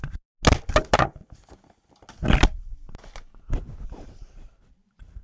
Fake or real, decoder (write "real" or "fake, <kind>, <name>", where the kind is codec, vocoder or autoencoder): real